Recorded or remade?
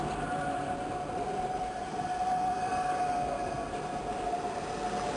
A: recorded